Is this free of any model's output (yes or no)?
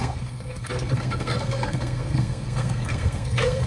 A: no